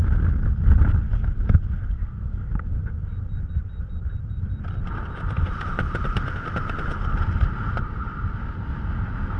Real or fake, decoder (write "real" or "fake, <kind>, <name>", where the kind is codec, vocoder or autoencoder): real